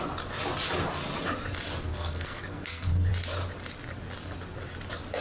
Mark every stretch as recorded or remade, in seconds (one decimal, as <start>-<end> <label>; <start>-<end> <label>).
0.0-1.9 recorded; 1.9-3.1 remade; 3.1-5.2 recorded

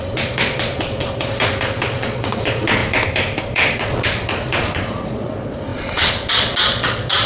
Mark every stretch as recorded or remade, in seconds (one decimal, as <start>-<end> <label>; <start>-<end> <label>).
0.0-2.8 remade; 2.8-3.4 recorded; 3.4-7.3 remade

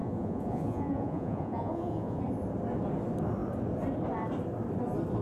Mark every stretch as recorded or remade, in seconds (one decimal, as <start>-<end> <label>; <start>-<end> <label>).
0.0-2.2 remade; 2.2-5.2 recorded

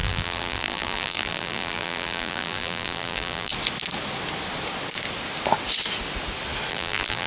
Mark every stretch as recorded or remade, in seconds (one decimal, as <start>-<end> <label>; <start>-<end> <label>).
0.0-3.5 remade; 3.5-6.7 recorded; 6.7-7.3 remade

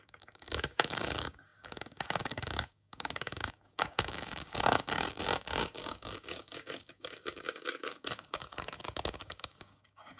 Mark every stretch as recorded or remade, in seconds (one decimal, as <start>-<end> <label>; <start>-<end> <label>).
0.0-10.2 remade

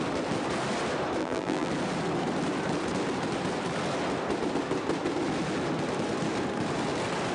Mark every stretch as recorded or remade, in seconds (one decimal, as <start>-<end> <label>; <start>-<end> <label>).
0.0-1.2 recorded; 1.2-1.7 remade; 1.7-7.3 recorded

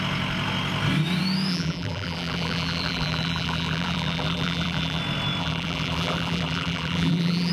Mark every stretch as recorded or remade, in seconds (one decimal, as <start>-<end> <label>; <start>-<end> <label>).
0.0-1.5 recorded; 1.5-5.0 remade; 5.0-5.4 recorded; 5.4-7.5 remade

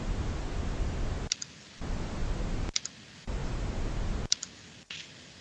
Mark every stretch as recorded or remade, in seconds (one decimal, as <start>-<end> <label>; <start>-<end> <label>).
0.0-5.4 recorded